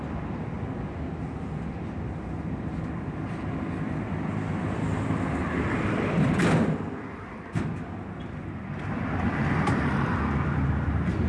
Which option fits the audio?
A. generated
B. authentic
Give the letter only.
A